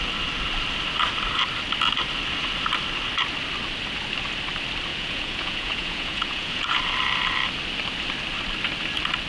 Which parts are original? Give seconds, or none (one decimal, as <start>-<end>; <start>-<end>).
0.0-4.9; 6.7-9.3